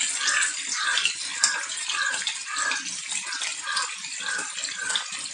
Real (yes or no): yes